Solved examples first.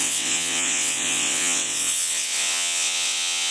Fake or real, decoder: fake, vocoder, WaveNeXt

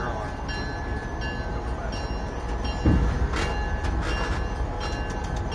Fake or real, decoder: real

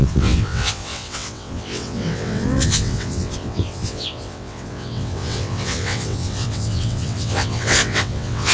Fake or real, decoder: fake, vocoder, WaveNeXt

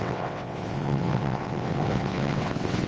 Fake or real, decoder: fake, vocoder, WaveNeXt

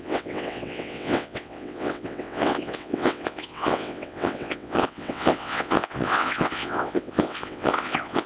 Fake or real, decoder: fake, vocoder, WaveNeXt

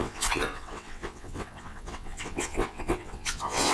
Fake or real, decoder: fake, vocoder, WaveNeXt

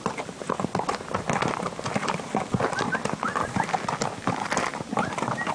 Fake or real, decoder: real